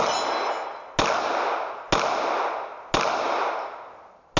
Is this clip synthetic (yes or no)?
no